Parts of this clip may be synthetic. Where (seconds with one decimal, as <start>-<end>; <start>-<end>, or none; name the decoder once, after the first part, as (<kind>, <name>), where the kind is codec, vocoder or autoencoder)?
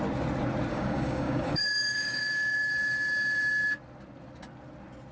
0.7-2.7 (codec, DAC)